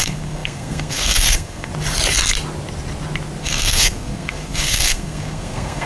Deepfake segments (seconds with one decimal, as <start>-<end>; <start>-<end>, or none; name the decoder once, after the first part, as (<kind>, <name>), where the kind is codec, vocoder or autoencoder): 0.0-1.7 (codec, SNAC); 3.4-5.9